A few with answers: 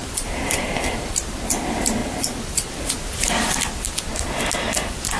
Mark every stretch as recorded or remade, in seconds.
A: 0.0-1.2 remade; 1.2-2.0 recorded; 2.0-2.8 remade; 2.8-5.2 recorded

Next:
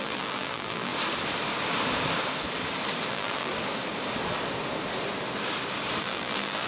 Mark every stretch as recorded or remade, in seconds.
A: 0.0-0.9 remade; 0.9-3.1 recorded; 3.1-3.5 remade; 3.5-6.0 recorded; 6.0-6.7 remade

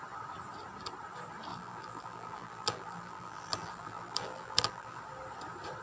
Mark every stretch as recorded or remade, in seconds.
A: 0.0-1.5 recorded; 1.5-5.0 remade; 5.0-5.8 recorded

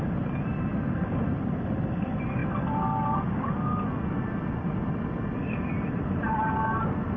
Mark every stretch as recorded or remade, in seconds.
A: 0.0-2.4 remade; 2.4-5.5 recorded; 5.5-7.2 remade

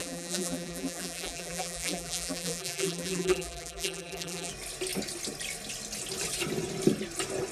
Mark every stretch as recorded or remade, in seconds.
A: 0.0-4.5 remade; 4.5-7.5 recorded

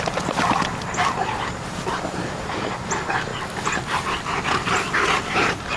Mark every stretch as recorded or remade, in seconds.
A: 0.0-3.3 remade; 3.3-5.3 recorded; 5.3-5.8 remade

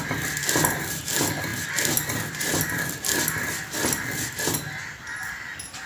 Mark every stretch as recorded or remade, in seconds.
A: 0.0-1.5 remade; 1.5-5.0 recorded; 5.0-5.9 remade